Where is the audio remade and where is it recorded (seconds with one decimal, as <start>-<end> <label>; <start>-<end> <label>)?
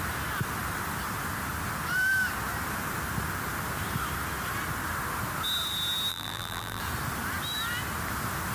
0.0-6.1 recorded; 6.1-6.8 remade; 6.8-8.5 recorded